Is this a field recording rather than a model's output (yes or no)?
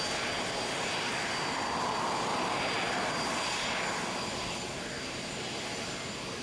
yes